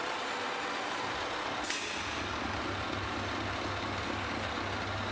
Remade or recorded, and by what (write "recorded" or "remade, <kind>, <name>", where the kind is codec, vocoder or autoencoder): recorded